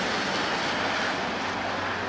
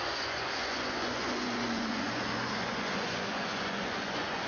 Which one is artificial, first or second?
second